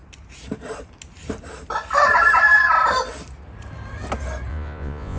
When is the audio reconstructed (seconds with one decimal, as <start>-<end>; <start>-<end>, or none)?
4.5-5.2